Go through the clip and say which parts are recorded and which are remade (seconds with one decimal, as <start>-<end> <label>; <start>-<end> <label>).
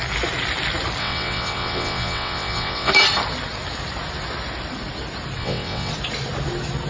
0.0-1.0 recorded; 1.0-2.9 remade; 2.9-5.4 recorded; 5.4-5.9 remade; 5.9-6.9 recorded